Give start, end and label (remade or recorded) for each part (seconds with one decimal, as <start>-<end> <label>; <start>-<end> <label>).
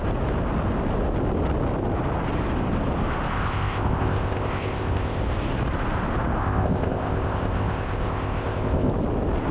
0.0-3.3 recorded; 3.3-5.2 remade; 5.2-6.4 recorded; 6.4-8.9 remade; 8.9-9.5 recorded